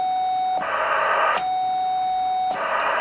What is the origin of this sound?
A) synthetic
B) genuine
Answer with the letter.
B